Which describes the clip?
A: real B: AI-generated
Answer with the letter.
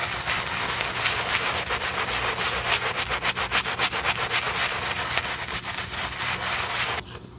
A